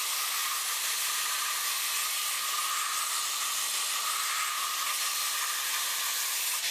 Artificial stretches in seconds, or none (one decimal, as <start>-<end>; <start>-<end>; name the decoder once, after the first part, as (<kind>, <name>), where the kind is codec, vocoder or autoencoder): none